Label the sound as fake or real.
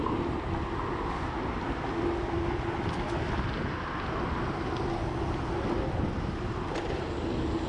real